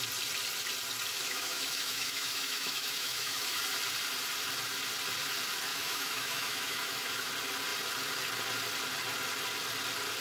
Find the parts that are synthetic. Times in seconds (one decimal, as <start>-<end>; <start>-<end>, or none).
1.1-3.6; 5.7-7.3